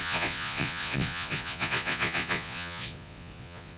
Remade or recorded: remade